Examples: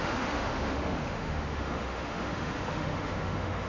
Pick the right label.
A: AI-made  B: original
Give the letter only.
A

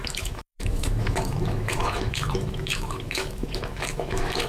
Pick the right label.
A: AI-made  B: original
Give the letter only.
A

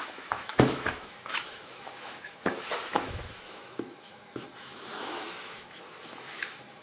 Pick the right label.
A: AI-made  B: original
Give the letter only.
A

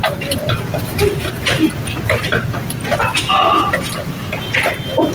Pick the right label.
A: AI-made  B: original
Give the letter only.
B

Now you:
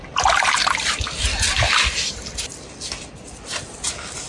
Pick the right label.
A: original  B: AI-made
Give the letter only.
A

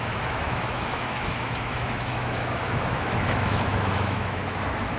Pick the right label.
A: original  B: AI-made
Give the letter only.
B